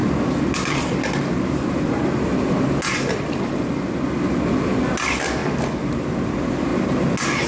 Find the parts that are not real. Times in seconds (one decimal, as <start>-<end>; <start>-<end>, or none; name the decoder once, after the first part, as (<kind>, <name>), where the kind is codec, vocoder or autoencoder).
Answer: 5.4-6.3 (vocoder, BigVGAN v2)